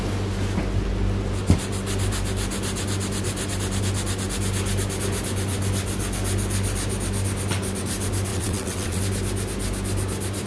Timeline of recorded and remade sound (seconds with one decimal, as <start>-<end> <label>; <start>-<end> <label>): 0.0-8.3 recorded; 8.3-9.0 remade; 9.0-10.5 recorded